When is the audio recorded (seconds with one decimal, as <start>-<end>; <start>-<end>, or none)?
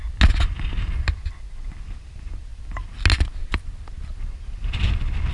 0.0-5.3